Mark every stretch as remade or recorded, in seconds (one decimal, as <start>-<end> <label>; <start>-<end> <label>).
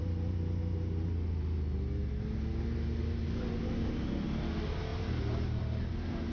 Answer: 0.0-6.3 recorded